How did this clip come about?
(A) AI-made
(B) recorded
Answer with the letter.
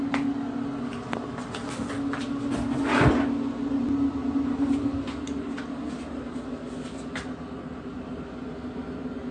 B